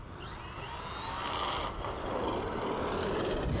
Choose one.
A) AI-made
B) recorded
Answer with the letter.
B